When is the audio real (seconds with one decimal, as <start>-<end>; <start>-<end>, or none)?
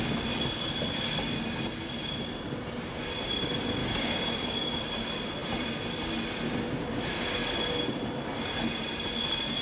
0.0-3.8; 4.7-9.6